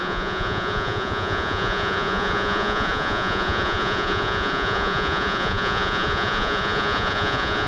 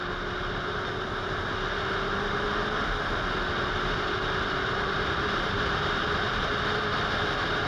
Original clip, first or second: second